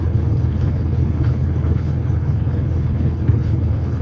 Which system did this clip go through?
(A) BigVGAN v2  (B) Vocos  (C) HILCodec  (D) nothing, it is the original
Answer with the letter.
C